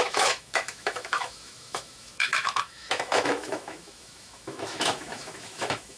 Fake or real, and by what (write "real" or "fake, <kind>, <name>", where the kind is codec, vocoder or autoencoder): fake, autoencoder, DAC-VAE